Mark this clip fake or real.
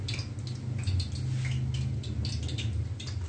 real